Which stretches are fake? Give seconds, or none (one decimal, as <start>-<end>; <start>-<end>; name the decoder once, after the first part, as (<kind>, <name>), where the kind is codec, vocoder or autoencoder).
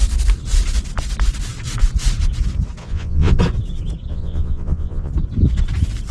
2.8-3.4 (vocoder, Vocos); 4.1-5.1